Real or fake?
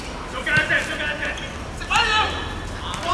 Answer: real